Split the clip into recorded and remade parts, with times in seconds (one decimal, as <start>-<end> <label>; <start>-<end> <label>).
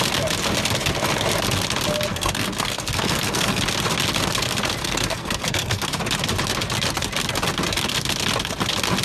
0.0-2.1 recorded; 2.1-3.6 remade; 3.6-4.8 recorded; 4.8-6.0 remade; 6.0-9.0 recorded